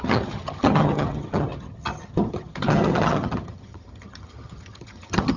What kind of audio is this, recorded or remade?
remade